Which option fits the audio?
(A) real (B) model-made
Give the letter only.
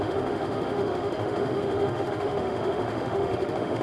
B